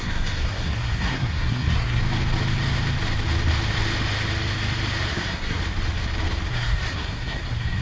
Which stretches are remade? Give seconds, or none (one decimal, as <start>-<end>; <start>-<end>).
0.0-2.0; 5.1-5.6; 6.5-7.8